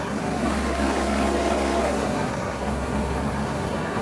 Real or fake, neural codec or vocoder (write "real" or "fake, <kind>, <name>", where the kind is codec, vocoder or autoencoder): fake, codec, SNAC